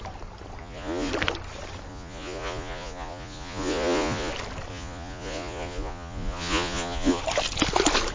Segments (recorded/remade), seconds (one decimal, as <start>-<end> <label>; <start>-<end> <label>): 0.0-0.6 recorded; 0.6-1.1 remade; 1.1-1.9 recorded; 1.9-4.3 remade; 4.3-4.7 recorded; 4.7-7.2 remade; 7.2-8.1 recorded